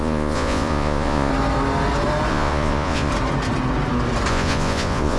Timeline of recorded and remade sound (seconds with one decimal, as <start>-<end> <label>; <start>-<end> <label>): 0.0-1.3 remade; 1.3-2.3 recorded; 2.3-3.1 remade; 3.1-4.3 recorded; 4.3-5.2 remade